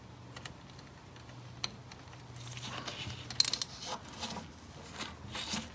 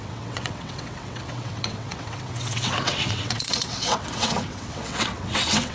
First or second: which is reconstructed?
second